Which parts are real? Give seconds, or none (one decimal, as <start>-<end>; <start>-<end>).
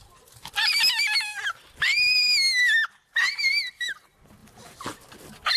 0.0-5.6